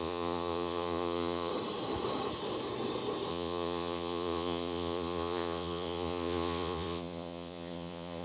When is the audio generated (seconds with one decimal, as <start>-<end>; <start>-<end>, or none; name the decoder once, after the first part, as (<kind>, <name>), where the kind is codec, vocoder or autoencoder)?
0.0-1.5 (vocoder, Vocos); 3.3-8.2